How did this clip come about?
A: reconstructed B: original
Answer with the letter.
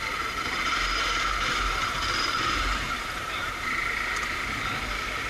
A